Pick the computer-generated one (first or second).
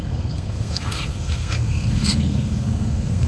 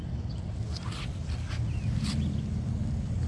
first